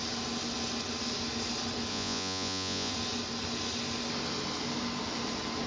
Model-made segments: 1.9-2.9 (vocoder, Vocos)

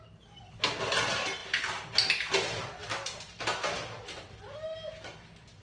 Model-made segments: none